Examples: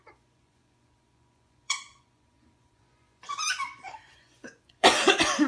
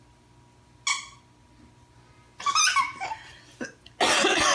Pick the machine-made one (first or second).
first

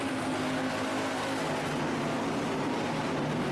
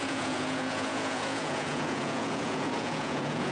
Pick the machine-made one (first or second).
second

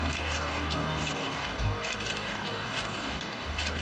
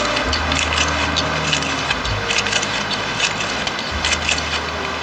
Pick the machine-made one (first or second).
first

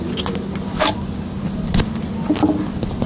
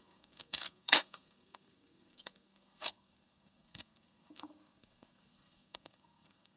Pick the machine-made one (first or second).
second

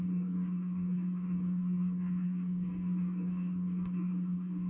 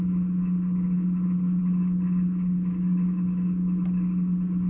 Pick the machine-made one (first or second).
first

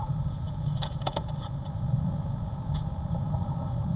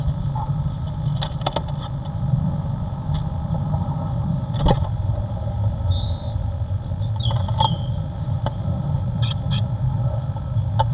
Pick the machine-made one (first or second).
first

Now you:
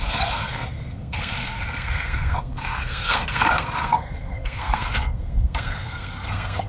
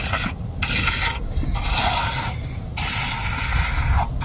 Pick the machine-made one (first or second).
first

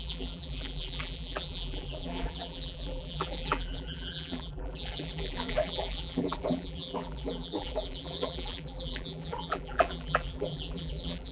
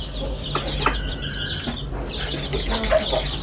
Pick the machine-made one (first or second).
first